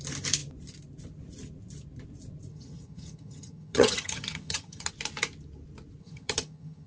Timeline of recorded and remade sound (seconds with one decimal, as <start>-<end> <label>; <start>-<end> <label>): 0.0-2.5 recorded; 2.5-4.9 remade; 4.9-6.0 recorded; 6.0-6.9 remade